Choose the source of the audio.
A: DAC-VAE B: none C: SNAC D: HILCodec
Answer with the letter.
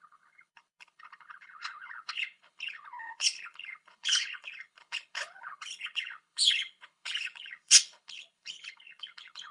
D